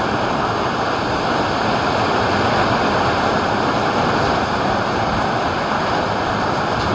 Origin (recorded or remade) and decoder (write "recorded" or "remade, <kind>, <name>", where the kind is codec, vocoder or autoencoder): remade, vocoder, BigVGAN v2